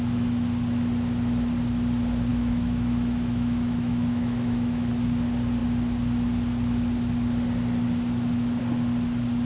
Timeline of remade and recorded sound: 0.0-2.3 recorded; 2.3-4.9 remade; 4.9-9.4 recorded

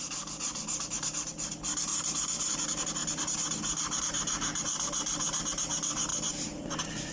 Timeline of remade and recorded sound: 0.0-1.9 recorded; 1.9-2.5 remade; 2.5-4.5 recorded; 4.5-5.5 remade; 5.5-6.1 recorded; 6.1-7.1 remade